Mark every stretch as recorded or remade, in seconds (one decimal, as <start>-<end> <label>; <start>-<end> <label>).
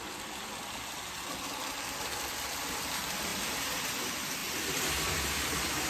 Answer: 0.0-5.9 recorded